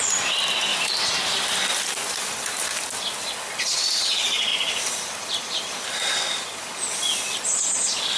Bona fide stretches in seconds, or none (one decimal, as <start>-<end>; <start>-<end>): 0.0-0.7; 1.6-4.5; 5.1-8.2